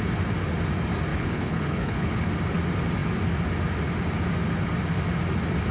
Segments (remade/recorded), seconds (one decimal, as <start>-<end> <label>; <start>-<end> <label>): 0.0-1.1 recorded; 1.1-2.3 remade; 2.3-5.7 recorded